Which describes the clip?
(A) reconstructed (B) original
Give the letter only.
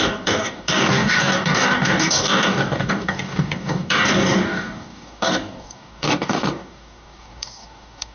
A